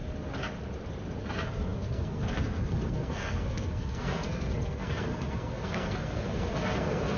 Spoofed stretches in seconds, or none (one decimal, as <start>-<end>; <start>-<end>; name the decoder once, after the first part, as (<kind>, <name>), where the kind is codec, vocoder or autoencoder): 1.2-7.2 (codec, SNAC)